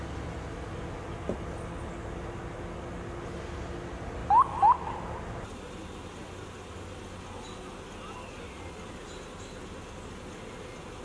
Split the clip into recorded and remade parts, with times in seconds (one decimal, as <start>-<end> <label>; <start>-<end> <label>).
0.0-11.0 recorded